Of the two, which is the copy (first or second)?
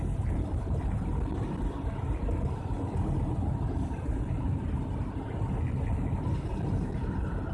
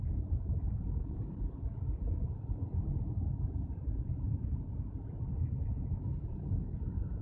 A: second